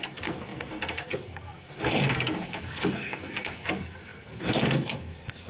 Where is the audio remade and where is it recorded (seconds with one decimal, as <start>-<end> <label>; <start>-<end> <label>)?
0.0-5.5 remade